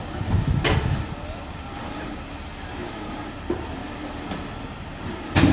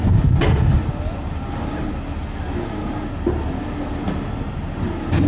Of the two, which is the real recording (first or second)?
second